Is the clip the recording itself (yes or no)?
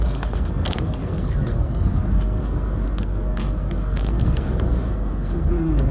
no